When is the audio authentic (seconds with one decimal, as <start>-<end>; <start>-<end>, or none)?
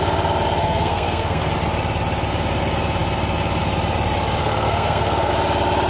0.0-0.6; 1.5-4.4; 5.3-5.9